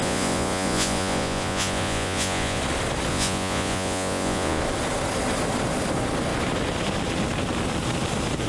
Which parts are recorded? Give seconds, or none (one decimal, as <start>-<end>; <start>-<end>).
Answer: 2.6-3.1; 4.6-8.5